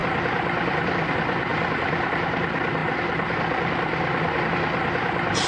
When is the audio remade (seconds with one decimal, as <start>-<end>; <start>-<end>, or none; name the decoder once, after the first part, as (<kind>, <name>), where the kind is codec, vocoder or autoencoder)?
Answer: 1.5-2.1 (vocoder, BigVGAN v2)